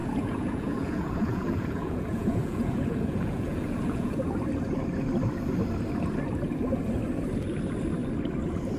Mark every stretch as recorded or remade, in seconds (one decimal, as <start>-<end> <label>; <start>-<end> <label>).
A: 0.0-4.2 remade; 4.2-8.8 recorded